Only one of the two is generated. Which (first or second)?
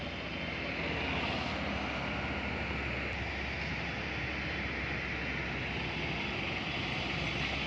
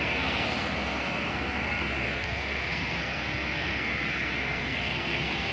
second